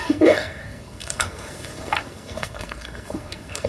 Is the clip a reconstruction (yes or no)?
yes